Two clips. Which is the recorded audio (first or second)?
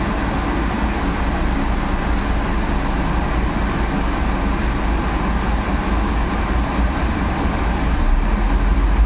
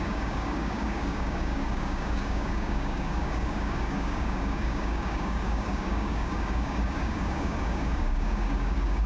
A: first